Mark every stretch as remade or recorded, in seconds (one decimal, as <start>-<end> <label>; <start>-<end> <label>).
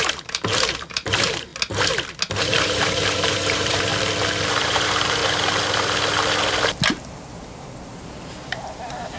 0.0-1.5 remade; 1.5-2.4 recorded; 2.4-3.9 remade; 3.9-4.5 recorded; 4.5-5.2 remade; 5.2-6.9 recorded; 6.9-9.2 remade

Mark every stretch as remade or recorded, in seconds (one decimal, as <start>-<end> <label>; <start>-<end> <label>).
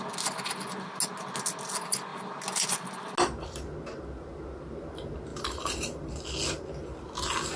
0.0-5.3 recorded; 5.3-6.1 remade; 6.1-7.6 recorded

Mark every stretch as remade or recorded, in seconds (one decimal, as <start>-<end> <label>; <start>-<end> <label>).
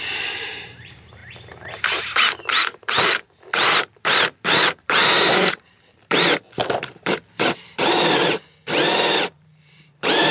0.0-10.3 remade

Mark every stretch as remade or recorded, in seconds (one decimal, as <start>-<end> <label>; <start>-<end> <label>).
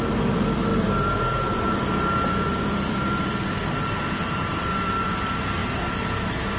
0.0-6.6 remade